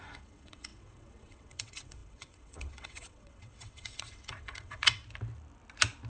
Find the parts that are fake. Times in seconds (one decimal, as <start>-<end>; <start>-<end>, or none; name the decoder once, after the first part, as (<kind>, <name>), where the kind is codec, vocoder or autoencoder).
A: 0.0-5.0 (vocoder, WaveNeXt)